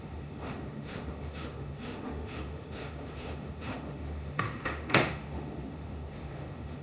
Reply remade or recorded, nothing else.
remade